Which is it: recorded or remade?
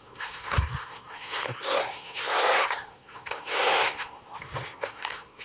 remade